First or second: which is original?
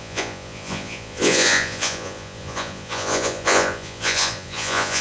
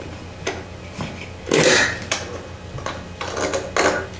second